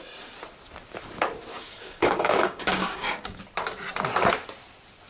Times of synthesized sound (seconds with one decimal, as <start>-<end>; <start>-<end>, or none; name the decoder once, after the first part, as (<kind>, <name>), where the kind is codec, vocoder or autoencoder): 1.5-3.4 (codec, DAC)